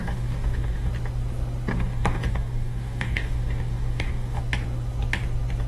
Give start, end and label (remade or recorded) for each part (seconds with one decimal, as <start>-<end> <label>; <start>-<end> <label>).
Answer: 0.0-0.9 remade; 0.9-1.7 recorded; 1.7-4.4 remade; 4.4-5.7 recorded

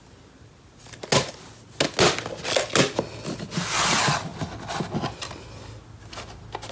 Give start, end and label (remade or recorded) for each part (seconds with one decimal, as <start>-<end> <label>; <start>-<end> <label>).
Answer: 0.0-6.7 recorded